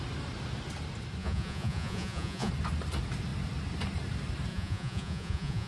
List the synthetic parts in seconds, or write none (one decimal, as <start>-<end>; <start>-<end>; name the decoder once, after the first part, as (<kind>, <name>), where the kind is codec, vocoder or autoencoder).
1.2-2.5 (vocoder, Vocos); 4.5-5.7